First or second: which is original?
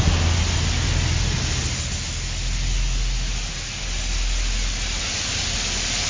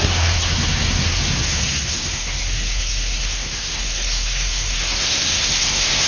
first